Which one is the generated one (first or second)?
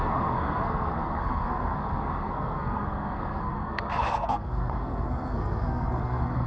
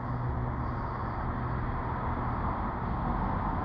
first